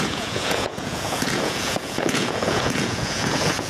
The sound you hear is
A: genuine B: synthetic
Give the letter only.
B